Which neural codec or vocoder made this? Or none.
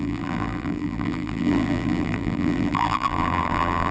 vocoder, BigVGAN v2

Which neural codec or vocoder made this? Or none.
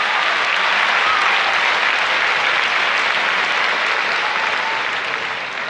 none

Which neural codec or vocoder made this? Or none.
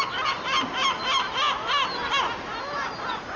none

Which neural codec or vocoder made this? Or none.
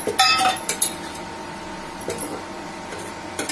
vocoder, BigVGAN v2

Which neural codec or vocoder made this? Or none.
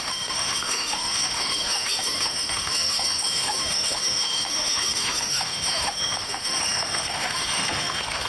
autoencoder, DAC-VAE